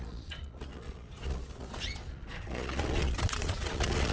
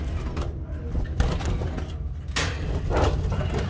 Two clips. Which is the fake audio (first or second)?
first